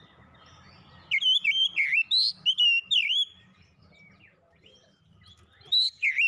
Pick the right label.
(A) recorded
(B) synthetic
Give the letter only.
A